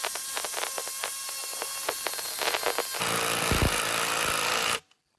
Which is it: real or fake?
real